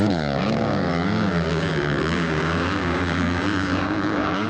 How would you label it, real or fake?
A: fake